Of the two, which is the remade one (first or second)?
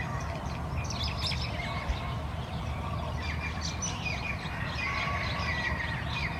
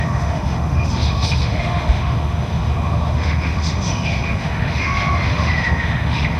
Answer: second